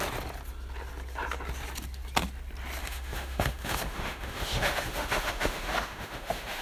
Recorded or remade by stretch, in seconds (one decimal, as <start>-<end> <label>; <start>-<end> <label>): 0.0-2.8 recorded; 2.8-6.6 remade